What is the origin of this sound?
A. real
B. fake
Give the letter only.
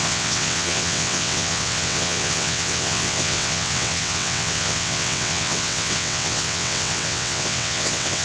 B